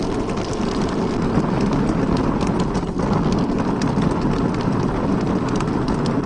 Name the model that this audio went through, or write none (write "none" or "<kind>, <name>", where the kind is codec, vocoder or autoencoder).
none